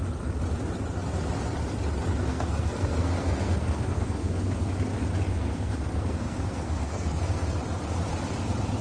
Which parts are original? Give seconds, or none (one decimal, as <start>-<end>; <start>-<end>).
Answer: 0.0-2.1; 4.7-5.3; 7.5-8.8